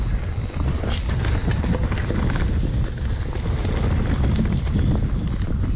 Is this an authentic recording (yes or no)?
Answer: yes